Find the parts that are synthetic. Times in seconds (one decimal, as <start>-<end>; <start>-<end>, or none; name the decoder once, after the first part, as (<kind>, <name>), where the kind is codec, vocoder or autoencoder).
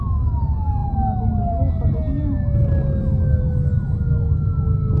none